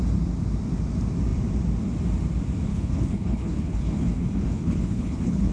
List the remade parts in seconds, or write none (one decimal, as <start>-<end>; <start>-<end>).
2.7-5.5